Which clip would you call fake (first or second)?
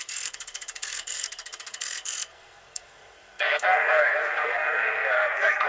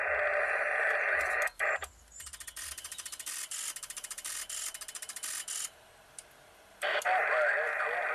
first